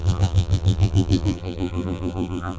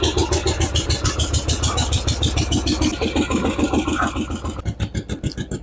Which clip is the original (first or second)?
second